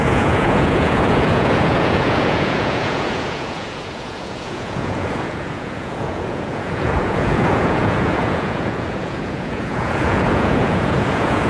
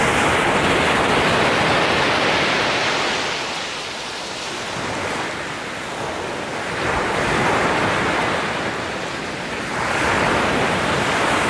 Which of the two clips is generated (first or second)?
first